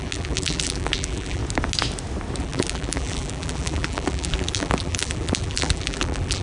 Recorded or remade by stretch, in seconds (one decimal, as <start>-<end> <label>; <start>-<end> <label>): 0.0-1.4 remade; 1.4-2.4 recorded; 2.4-6.4 remade